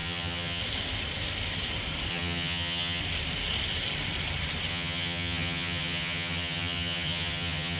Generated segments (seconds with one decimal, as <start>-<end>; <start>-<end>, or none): 0.0-0.6; 2.1-3.0; 4.7-7.8